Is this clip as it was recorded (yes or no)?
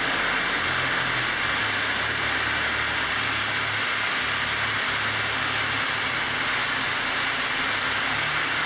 yes